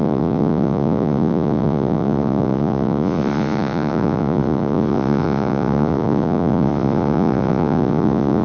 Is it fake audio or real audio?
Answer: fake